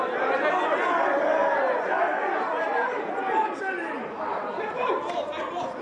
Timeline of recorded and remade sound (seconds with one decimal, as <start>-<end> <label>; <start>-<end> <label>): 0.0-1.4 recorded; 1.4-4.9 remade; 4.9-5.8 recorded